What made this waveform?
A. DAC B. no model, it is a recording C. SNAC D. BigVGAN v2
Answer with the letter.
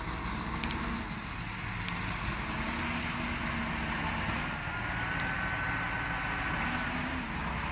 B